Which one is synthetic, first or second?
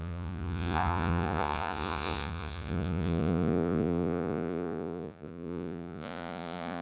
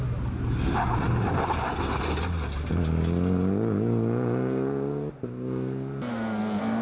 first